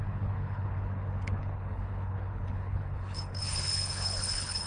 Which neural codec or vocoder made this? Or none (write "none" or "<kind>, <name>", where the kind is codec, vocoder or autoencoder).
codec, HILCodec